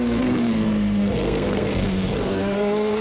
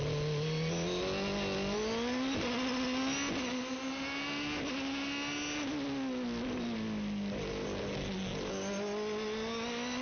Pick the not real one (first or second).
first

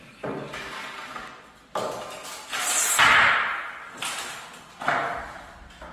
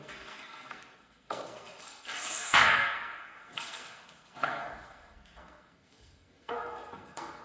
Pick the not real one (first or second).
second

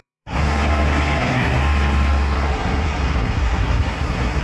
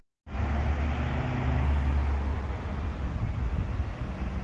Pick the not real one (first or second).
first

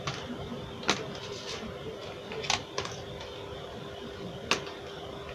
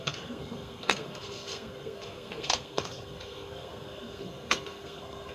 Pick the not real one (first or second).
second